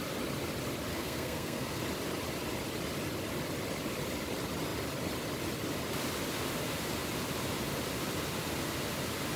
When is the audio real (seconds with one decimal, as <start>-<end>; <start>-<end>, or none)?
0.0-0.9; 1.8-9.4

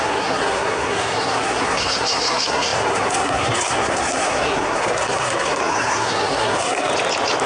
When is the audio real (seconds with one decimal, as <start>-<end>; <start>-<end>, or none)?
6.9-7.5

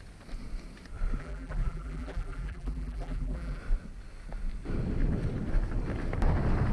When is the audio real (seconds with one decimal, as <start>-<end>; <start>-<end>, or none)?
0.0-1.2; 3.6-6.7